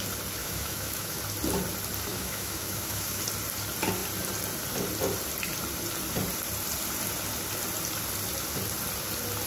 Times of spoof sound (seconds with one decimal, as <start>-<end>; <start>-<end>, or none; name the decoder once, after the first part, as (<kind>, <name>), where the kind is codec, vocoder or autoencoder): 0.4-1.2 (autoencoder, DAC-VAE); 2.1-3.2